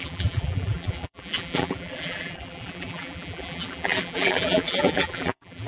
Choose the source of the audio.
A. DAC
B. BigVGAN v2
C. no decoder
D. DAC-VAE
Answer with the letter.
B